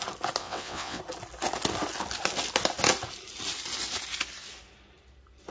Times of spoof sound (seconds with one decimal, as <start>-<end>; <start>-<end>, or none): 0.4-1.0